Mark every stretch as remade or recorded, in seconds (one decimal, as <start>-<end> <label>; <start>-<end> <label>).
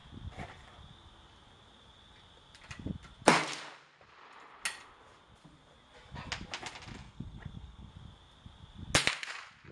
0.0-7.0 recorded; 7.0-7.9 remade; 7.9-9.7 recorded